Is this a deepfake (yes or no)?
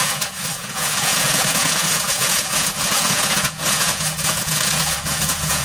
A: yes